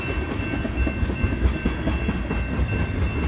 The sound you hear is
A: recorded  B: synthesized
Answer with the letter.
A